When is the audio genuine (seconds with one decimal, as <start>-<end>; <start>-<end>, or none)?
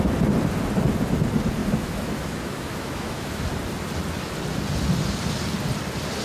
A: 0.0-1.6; 3.4-6.2